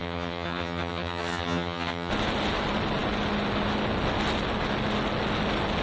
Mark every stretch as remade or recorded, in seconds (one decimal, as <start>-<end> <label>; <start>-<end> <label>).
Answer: 0.0-2.1 remade; 2.1-5.8 recorded